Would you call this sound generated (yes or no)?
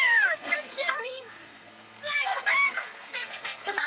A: yes